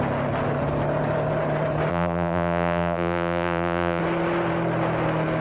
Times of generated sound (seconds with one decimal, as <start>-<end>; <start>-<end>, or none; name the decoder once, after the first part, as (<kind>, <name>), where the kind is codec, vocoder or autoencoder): 1.9-4.0 (vocoder, BigVGAN v2)